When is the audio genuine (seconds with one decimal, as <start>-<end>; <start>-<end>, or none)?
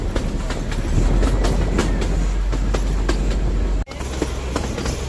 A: 0.0-5.1